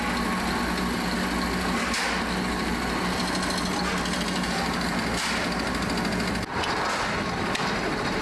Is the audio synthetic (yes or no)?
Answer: no